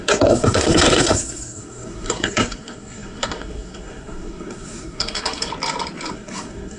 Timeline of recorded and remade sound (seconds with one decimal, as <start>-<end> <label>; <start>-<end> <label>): 0.0-5.5 remade; 5.5-6.1 recorded; 6.1-6.8 remade